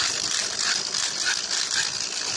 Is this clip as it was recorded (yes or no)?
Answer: yes